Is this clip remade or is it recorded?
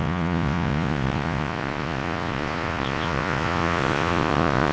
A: remade